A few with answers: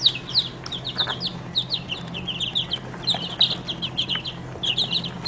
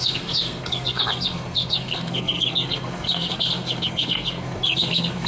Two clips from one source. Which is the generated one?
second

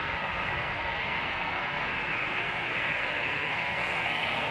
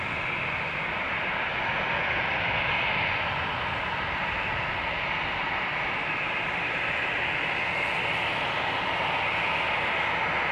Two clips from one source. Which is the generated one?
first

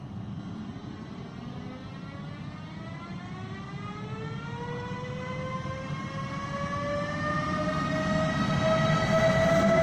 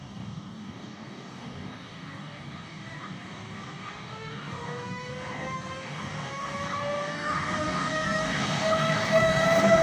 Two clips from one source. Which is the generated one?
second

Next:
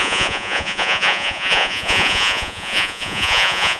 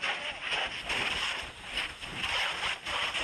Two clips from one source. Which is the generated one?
first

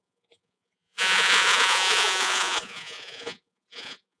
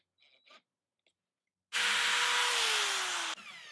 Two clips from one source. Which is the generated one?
first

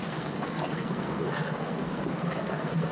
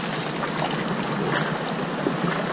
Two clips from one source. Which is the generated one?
first